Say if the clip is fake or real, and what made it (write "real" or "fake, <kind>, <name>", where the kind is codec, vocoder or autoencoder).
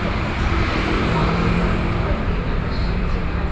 fake, vocoder, BigVGAN v2